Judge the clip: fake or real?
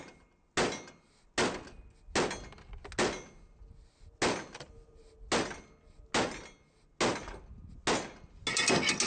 real